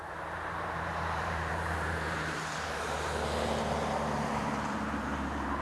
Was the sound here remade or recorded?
remade